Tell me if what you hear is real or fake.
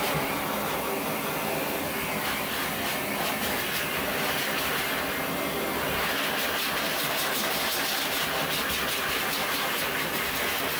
real